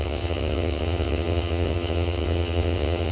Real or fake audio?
fake